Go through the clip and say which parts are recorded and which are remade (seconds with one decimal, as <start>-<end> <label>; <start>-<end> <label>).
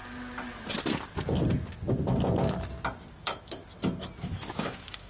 0.0-3.1 recorded; 3.1-3.6 remade; 3.6-4.2 recorded; 4.2-5.1 remade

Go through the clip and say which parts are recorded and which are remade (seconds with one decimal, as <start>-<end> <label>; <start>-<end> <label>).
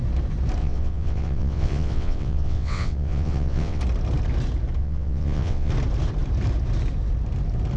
0.0-0.6 recorded; 0.6-3.8 remade; 3.8-4.8 recorded; 4.8-5.7 remade; 5.7-7.8 recorded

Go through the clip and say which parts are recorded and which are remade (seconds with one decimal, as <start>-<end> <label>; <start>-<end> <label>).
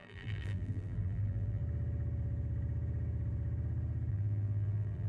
0.0-1.6 remade; 1.6-4.1 recorded; 4.1-5.1 remade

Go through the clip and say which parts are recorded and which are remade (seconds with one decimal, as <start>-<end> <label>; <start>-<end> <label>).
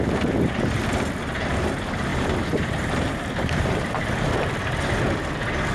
0.0-2.1 recorded; 2.1-4.2 remade; 4.2-5.7 recorded